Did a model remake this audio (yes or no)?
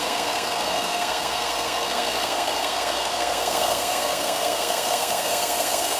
yes